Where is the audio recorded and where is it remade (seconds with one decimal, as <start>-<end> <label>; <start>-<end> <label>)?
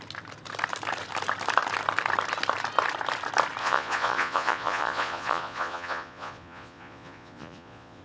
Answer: 0.0-3.6 recorded; 3.6-8.0 remade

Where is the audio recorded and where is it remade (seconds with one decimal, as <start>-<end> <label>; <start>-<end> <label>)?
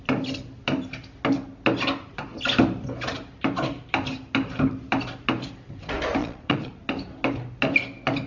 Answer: 0.0-6.2 recorded; 6.2-6.8 remade; 6.8-8.3 recorded